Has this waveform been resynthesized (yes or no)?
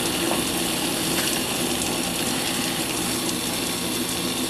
no